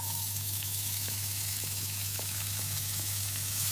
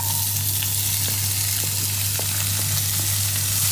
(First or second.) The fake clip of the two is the first